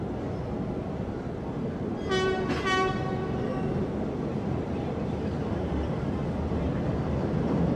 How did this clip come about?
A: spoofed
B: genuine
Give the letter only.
B